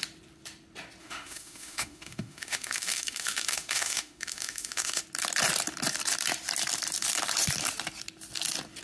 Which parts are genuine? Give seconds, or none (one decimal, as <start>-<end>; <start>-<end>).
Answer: 0.0-1.0; 5.0-8.8